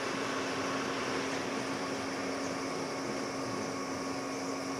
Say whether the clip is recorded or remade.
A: recorded